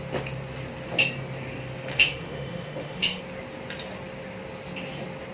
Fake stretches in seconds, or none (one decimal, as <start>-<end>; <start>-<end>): 1.9-3.2